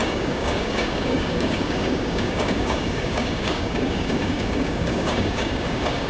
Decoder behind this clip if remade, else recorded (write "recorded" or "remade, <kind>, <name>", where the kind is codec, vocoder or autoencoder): remade, codec, DAC